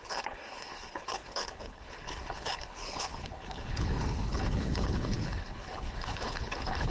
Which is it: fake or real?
fake